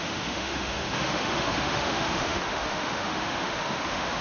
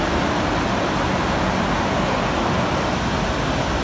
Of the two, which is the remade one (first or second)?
first